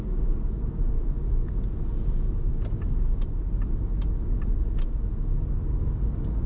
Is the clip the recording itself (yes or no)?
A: yes